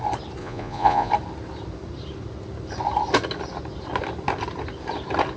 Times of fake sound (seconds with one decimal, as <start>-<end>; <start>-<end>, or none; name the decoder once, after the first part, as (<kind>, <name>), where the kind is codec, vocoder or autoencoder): 0.4-1.1 (vocoder, Vocos)